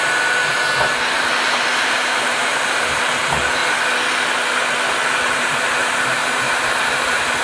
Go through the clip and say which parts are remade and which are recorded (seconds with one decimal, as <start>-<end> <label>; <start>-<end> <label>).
0.0-1.7 recorded; 1.7-3.2 remade; 3.2-5.8 recorded; 5.8-7.4 remade